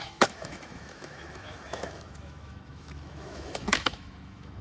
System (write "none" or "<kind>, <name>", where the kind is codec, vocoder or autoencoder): autoencoder, DAC-VAE